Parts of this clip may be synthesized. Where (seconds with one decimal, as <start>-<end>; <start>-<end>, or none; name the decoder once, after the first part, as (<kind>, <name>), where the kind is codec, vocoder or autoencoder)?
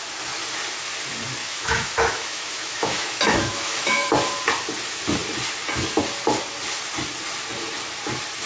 1.4-4.1 (autoencoder, DAC-VAE)